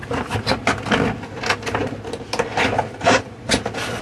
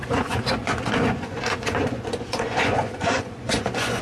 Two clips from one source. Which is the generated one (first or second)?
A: second